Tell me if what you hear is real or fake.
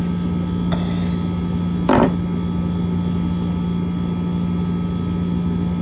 real